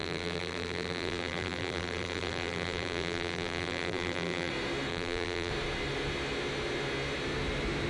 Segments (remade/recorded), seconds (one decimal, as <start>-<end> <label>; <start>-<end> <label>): 0.0-4.5 remade; 4.5-4.9 recorded; 4.9-5.5 remade; 5.5-7.9 recorded